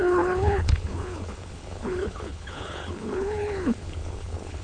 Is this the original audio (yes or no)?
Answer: no